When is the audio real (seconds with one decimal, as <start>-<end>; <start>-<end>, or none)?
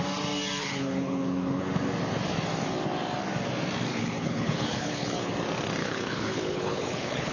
0.0-0.6; 1.7-3.9; 5.3-5.8